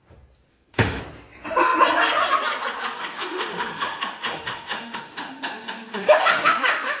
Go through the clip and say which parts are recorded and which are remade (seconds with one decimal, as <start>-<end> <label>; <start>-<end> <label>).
0.0-0.5 recorded; 0.5-1.0 remade; 1.0-3.0 recorded; 3.0-7.0 remade